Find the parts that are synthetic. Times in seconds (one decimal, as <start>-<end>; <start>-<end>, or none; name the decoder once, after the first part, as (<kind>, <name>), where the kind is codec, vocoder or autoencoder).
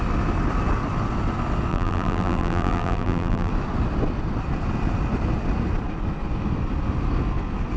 1.7-3.5 (vocoder, BigVGAN v2)